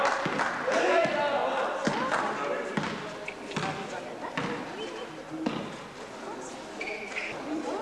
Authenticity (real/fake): real